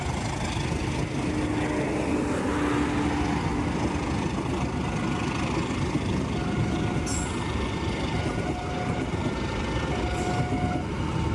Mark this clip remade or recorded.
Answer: recorded